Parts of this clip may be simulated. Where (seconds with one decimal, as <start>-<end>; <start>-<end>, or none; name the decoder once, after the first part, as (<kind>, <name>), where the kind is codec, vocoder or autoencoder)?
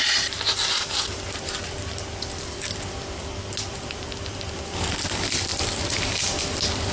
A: 3.7-4.9 (vocoder, BigVGAN v2); 5.5-6.4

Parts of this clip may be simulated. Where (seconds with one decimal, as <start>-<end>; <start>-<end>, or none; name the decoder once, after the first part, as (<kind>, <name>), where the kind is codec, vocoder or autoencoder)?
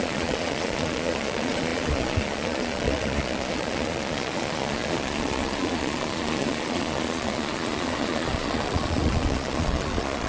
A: 0.0-10.3 (vocoder, Vocos)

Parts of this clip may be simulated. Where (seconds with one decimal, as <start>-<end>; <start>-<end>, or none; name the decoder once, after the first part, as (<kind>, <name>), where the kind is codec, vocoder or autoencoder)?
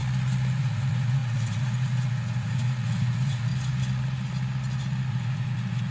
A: 0.6-3.5 (vocoder, Vocos); 5.1-5.9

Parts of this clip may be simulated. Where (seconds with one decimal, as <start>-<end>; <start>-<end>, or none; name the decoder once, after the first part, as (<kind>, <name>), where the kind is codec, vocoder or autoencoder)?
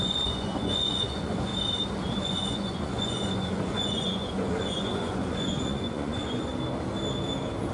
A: 0.0-1.5 (vocoder, Vocos); 2.2-6.5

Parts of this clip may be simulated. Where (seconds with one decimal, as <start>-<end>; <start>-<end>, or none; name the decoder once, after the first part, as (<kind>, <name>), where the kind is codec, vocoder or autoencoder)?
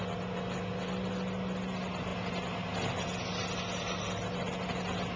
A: none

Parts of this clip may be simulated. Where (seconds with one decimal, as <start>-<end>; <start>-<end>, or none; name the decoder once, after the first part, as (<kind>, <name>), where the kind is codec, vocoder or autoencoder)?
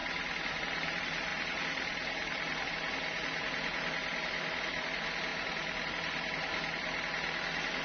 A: none